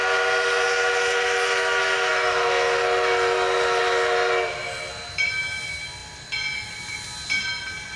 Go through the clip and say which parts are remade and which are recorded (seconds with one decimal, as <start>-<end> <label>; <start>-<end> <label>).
0.0-8.0 recorded